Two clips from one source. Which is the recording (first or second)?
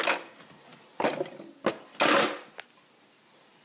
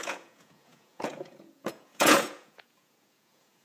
first